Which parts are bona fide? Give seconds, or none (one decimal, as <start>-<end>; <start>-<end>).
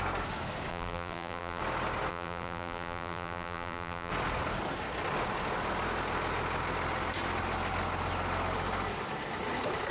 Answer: 0.0-0.7; 1.6-2.1; 4.1-9.9